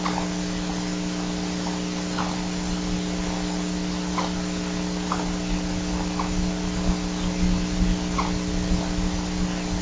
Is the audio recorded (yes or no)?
yes